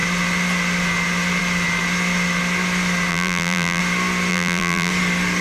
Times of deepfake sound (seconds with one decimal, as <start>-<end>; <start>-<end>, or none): 3.1-3.8; 4.3-4.9